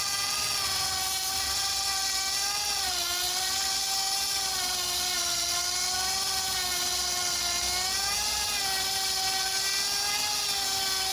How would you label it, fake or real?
real